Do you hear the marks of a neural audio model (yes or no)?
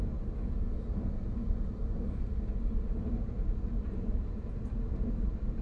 no